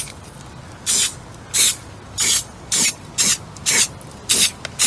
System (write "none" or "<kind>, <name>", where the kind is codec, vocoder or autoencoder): none